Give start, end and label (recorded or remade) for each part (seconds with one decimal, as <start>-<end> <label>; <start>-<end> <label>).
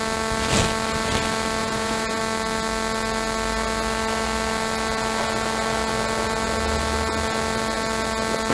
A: 0.0-1.6 recorded; 1.6-2.2 remade; 2.2-8.5 recorded